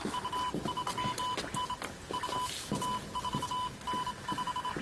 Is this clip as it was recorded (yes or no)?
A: yes